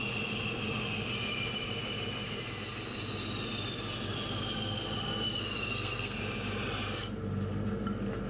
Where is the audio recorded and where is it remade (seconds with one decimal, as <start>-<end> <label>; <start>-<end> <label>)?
0.0-5.6 recorded; 5.6-6.2 remade; 6.2-8.3 recorded

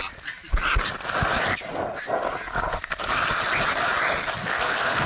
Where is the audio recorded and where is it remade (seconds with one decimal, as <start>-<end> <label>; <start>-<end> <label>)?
0.0-4.4 recorded; 4.4-5.1 remade